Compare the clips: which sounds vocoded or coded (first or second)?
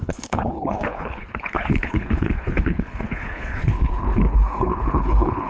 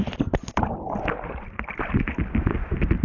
first